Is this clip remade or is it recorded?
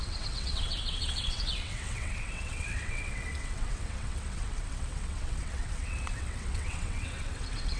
remade